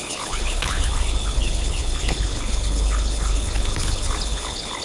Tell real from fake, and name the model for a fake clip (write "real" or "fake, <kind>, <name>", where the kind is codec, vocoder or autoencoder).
fake, codec, HILCodec